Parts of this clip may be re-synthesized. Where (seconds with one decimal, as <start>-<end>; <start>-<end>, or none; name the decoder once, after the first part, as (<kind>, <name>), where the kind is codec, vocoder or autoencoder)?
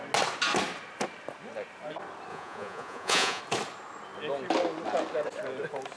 2.3-3.4 (vocoder, Vocos)